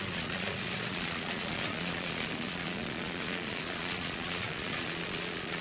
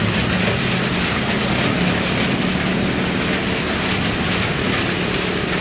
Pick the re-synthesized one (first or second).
first